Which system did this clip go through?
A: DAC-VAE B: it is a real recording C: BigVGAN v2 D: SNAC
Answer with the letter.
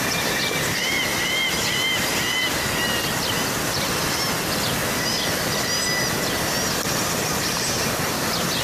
B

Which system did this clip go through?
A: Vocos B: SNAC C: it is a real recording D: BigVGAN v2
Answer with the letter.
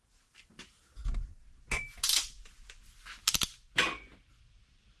C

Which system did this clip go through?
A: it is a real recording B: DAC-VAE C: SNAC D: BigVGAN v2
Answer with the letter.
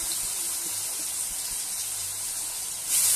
A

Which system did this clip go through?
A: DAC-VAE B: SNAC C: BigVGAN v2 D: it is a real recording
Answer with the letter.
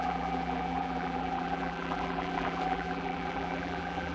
C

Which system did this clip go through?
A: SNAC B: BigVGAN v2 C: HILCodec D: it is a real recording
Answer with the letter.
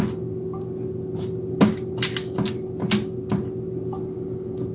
D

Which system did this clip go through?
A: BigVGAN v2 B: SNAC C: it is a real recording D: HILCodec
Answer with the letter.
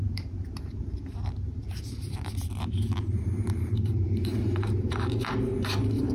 A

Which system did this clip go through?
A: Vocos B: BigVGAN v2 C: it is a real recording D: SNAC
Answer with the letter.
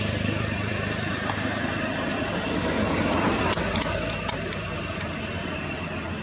B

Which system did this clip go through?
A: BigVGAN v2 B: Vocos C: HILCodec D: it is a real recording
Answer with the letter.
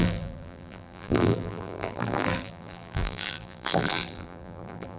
A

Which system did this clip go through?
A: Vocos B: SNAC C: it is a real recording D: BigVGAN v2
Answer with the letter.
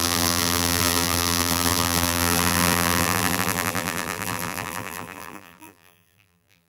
D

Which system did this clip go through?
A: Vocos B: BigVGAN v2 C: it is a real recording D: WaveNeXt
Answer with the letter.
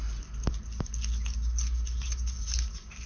C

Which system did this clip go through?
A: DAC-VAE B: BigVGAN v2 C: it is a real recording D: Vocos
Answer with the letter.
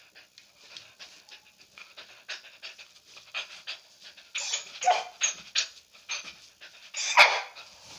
C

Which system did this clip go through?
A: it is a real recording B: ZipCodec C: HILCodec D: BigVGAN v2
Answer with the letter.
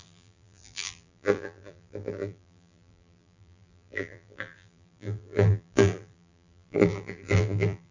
D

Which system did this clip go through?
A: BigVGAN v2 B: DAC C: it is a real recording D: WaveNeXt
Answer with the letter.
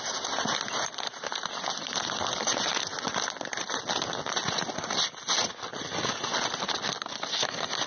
C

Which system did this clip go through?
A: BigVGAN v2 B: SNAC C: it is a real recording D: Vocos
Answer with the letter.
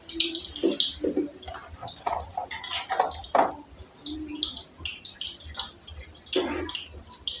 C